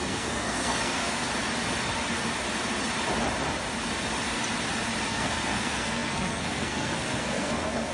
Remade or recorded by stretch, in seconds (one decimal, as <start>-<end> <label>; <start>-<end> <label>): 0.0-1.3 remade; 1.3-5.1 recorded; 5.1-7.9 remade